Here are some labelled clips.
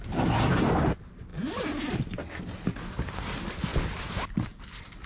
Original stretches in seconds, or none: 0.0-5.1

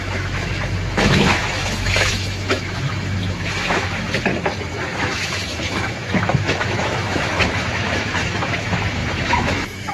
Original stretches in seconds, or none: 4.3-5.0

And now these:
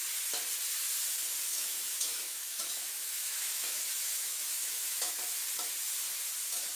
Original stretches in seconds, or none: 0.0-1.5; 5.1-6.7

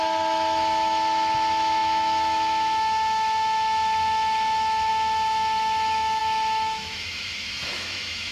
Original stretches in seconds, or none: none

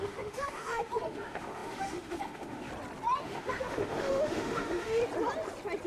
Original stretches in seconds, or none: 2.7-3.2; 5.0-5.9